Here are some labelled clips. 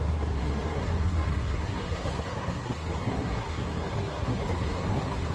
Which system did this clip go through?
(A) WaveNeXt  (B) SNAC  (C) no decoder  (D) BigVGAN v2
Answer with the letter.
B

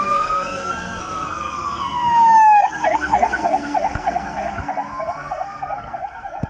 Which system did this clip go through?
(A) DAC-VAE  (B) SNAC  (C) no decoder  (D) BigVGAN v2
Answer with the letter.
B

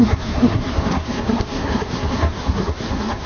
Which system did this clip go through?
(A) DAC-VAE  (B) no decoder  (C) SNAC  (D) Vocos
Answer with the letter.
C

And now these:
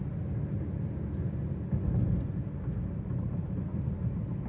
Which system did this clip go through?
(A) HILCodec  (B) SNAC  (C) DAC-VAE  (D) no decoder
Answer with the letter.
D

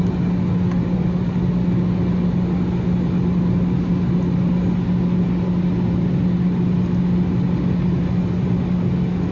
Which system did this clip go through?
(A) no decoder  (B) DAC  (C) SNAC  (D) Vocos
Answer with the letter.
A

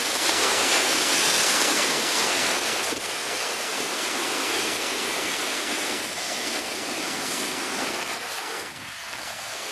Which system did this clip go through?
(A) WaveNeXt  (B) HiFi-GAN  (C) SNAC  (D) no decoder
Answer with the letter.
C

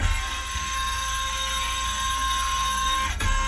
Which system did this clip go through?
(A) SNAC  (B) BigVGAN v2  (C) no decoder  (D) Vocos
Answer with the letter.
A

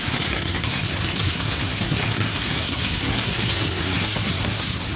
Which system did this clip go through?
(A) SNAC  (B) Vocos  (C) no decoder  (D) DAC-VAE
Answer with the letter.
A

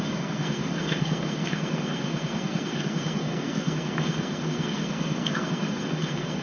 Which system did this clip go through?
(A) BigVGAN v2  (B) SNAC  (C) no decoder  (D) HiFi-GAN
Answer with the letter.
B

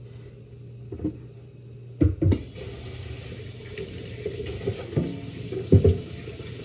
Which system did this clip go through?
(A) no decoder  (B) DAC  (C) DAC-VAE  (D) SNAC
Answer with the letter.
A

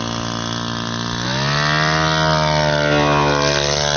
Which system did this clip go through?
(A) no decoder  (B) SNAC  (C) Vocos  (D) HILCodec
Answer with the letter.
A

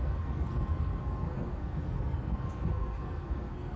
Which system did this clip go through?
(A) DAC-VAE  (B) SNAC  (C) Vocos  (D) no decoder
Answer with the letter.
B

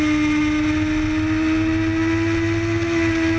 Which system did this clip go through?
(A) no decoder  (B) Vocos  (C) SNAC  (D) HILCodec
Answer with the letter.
A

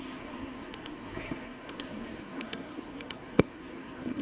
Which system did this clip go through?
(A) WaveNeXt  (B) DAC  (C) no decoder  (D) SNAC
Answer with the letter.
D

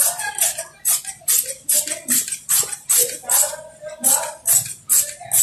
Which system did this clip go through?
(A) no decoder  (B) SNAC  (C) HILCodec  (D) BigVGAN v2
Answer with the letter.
A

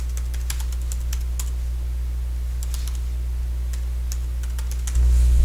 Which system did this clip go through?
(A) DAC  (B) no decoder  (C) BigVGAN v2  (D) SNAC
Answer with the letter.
B